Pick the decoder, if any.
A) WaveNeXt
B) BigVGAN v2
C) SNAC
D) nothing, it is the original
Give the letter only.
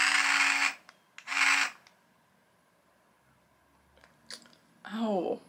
D